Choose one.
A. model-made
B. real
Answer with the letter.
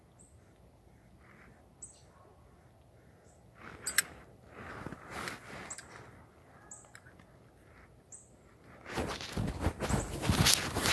B